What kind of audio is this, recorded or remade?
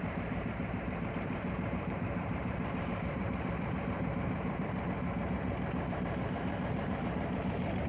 remade